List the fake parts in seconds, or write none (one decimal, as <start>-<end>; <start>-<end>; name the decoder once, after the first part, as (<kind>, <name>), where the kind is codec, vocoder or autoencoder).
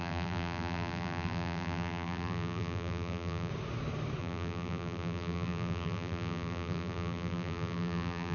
0.0-3.5 (vocoder, BigVGAN v2); 4.2-8.3